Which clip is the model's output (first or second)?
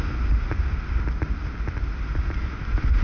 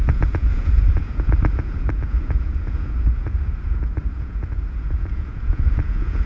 second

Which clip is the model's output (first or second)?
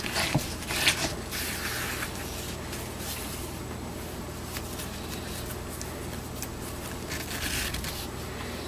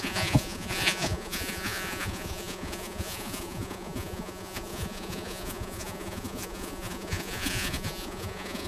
second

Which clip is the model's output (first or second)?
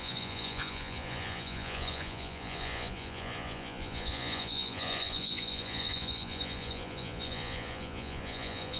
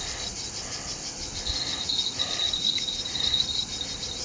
first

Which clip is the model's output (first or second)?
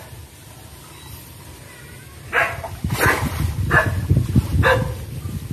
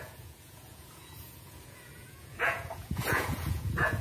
second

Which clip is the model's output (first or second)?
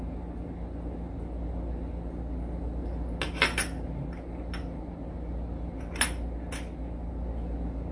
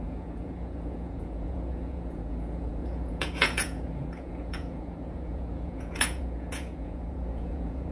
second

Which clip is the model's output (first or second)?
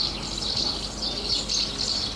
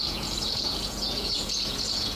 second